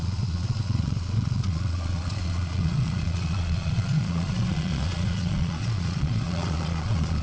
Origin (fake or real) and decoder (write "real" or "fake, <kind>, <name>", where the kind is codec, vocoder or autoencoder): fake, vocoder, Vocos